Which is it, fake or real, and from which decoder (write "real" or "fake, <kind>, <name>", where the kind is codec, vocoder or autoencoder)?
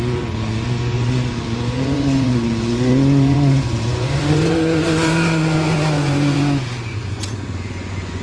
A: fake, vocoder, Vocos